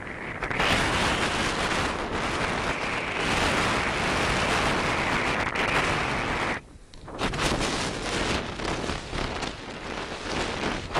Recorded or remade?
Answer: recorded